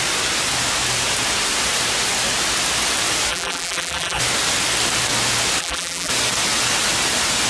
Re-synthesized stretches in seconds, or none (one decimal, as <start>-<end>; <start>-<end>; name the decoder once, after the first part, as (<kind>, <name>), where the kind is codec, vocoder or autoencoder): 3.3-4.2 (vocoder, BigVGAN v2); 5.6-6.1